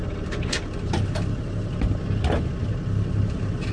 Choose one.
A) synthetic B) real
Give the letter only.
B